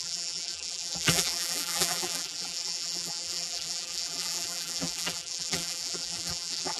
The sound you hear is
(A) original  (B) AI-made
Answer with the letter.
B